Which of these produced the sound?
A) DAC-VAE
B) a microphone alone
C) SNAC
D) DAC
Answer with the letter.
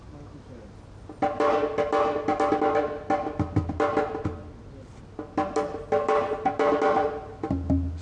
B